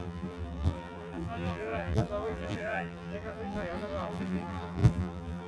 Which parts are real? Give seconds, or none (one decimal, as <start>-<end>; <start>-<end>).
none